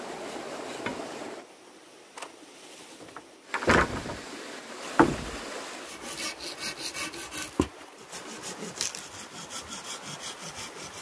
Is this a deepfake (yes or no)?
no